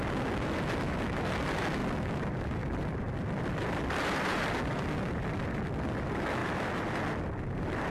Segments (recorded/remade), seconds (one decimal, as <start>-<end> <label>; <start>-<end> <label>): 0.0-1.8 recorded; 1.8-5.8 remade; 5.8-6.4 recorded; 6.4-7.9 remade